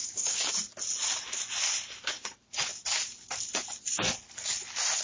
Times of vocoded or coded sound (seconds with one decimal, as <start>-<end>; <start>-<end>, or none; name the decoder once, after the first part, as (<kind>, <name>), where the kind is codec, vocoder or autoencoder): 0.0-0.5 (codec, DAC)